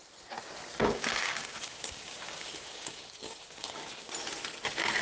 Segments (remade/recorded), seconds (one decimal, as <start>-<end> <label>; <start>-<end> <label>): 0.0-0.8 recorded; 0.8-3.8 remade; 3.8-5.0 recorded